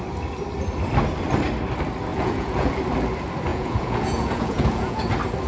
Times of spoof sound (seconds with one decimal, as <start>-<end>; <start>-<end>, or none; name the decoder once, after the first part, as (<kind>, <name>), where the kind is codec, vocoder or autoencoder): 2.1-2.8 (vocoder, Vocos); 3.5-5.1